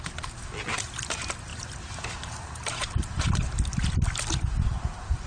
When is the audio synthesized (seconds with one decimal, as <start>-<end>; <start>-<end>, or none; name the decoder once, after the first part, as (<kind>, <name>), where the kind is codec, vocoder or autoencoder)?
1.5-3.2 (vocoder, BigVGAN v2)